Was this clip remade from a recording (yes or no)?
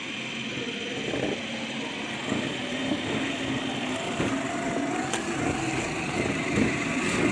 no